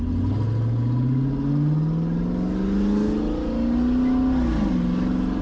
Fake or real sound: real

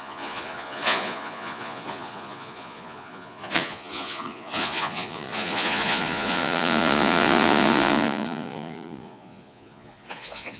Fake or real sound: fake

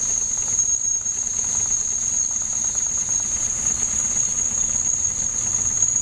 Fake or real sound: fake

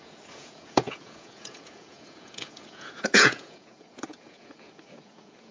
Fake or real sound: fake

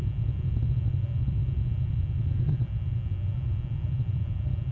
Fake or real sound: real